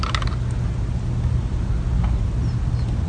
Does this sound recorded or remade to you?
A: recorded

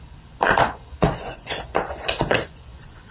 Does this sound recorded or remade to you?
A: remade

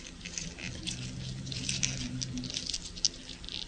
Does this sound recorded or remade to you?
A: recorded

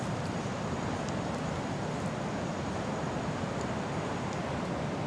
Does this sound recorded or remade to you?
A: recorded